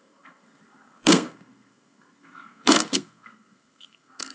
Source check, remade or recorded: remade